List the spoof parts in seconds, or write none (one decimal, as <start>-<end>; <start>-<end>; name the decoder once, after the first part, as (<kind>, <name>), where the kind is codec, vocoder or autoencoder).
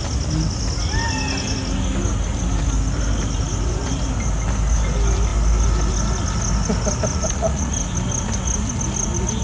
7.1-7.7 (vocoder, Vocos)